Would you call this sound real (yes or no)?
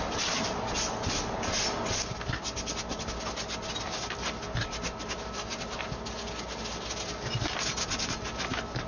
yes